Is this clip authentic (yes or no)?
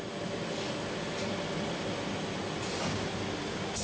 yes